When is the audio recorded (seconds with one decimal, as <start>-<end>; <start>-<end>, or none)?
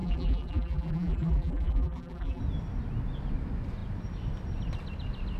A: 2.4-5.4